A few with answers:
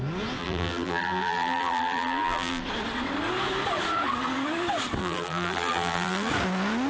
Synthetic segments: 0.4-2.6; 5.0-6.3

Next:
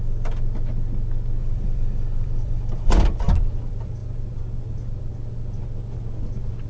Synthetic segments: 1.4-3.3

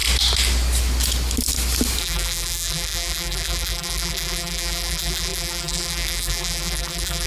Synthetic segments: 2.0-7.3

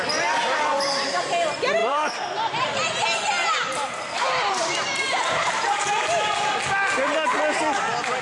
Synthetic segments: 1.8-5.8

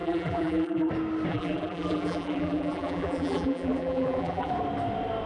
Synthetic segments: 0.0-0.9; 1.3-4.5

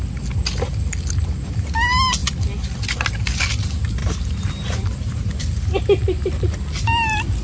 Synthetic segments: 4.0-5.8